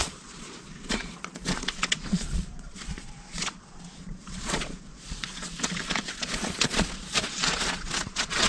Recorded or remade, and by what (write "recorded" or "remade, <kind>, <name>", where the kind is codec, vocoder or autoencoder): remade, vocoder, Vocos